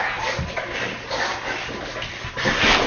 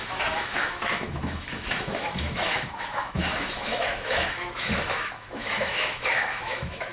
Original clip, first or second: first